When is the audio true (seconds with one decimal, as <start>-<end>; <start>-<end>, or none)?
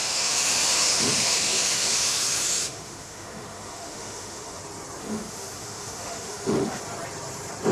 4.6-5.0; 6.8-7.7